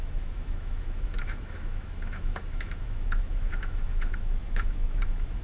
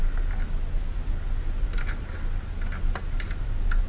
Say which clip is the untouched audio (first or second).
second